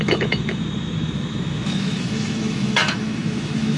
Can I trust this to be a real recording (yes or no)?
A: no